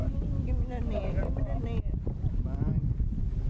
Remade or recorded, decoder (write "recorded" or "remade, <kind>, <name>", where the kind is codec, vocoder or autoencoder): recorded